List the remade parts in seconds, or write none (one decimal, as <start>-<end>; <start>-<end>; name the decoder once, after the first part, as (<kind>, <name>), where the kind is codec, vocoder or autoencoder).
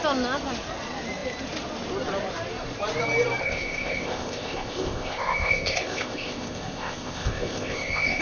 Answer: 3.4-8.2 (codec, ZipCodec)